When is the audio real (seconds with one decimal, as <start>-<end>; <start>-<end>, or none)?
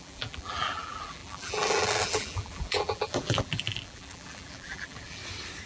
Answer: 5.2-5.7